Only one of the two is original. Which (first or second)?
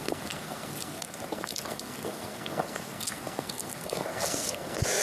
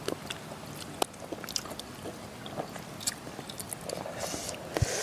second